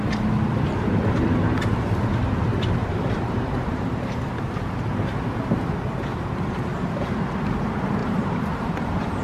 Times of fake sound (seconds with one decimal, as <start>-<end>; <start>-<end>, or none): 2.8-4.3; 8.0-9.2